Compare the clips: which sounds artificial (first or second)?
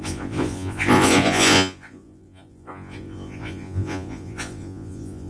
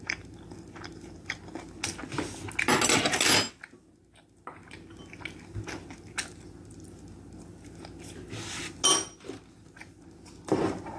first